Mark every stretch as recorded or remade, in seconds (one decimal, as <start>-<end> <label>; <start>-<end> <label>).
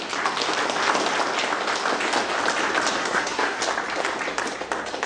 0.0-3.0 recorded; 3.0-3.6 remade; 3.6-5.1 recorded